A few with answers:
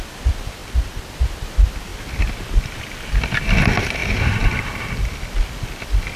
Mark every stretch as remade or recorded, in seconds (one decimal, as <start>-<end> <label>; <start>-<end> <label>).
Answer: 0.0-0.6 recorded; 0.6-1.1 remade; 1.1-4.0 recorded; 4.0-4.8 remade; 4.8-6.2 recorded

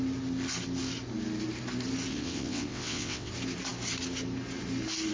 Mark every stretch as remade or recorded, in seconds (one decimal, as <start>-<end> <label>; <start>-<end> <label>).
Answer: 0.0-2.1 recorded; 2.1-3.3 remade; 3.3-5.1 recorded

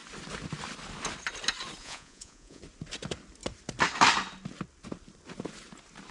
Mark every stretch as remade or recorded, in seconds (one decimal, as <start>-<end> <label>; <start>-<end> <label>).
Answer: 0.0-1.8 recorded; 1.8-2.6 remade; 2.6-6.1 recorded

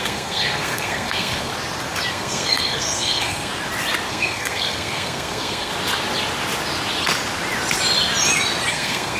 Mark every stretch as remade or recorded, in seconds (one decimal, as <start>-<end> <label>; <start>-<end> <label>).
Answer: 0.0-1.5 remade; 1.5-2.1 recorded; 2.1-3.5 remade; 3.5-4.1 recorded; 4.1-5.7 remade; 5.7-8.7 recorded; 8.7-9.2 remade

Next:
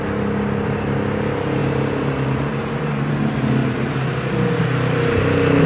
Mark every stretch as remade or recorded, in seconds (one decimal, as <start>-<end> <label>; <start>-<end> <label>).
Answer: 0.0-1.6 recorded; 1.6-3.1 remade; 3.1-3.6 recorded; 3.6-4.3 remade; 4.3-5.7 recorded

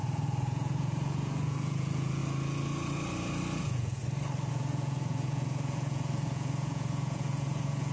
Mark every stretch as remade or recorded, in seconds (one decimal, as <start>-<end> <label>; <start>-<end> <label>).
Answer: 0.0-2.2 remade; 2.2-3.6 recorded; 3.6-4.0 remade; 4.0-4.5 recorded; 4.5-7.9 remade

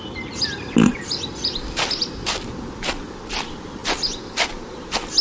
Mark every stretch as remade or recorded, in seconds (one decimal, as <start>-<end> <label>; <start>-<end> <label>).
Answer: 0.0-5.2 recorded

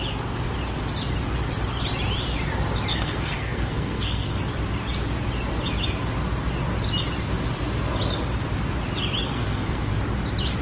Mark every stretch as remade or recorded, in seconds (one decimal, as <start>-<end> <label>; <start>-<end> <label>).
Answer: 0.0-2.9 recorded; 2.9-4.4 remade; 4.4-9.2 recorded; 9.2-9.9 remade; 9.9-10.6 recorded